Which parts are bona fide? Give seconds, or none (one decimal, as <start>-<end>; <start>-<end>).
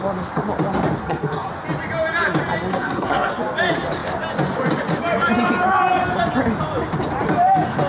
0.0-1.0; 1.5-2.7; 3.3-7.9